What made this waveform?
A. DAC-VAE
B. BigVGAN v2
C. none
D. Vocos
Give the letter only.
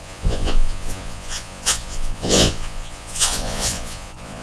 D